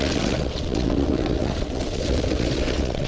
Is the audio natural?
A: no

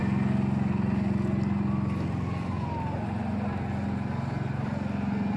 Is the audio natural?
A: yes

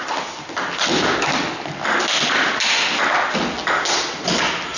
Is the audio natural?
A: yes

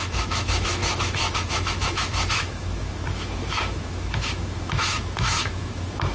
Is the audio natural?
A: no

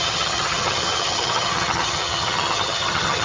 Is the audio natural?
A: no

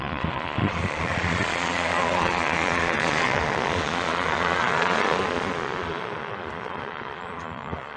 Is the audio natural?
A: no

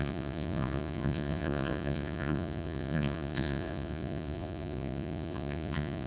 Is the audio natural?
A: no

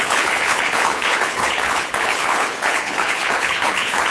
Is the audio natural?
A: no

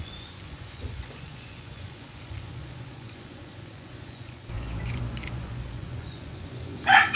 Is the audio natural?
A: no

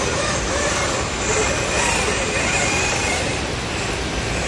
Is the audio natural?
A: yes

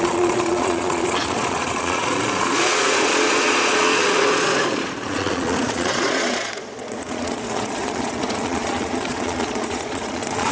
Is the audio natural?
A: no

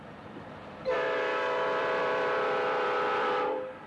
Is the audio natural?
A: no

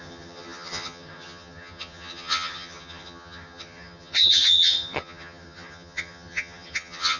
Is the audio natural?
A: no